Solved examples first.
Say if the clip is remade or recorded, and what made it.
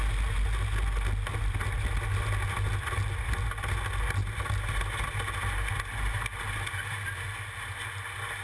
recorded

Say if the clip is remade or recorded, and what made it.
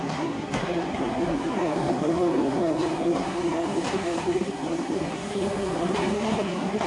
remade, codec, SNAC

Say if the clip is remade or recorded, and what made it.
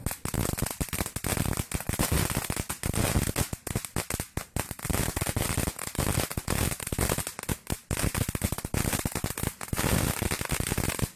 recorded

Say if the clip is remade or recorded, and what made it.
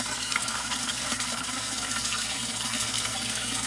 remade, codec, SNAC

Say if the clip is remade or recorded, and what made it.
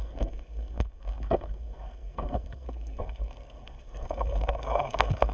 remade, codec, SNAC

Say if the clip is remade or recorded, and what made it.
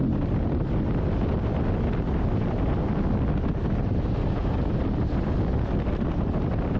recorded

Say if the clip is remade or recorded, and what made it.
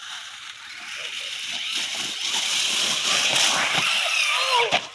recorded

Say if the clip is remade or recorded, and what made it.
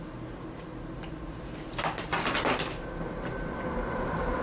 recorded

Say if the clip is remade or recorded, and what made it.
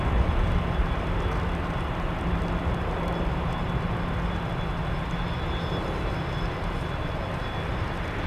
recorded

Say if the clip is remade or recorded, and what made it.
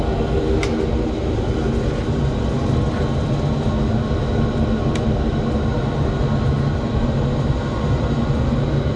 recorded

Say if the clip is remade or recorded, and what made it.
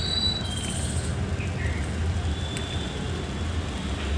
recorded